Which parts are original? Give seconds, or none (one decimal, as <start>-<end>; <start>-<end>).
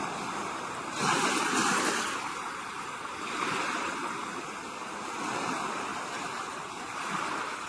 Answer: 0.0-0.4; 4.6-5.9; 7.2-7.7